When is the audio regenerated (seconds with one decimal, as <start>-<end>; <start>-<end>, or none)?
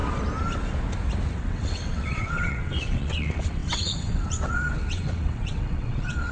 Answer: 1.4-6.3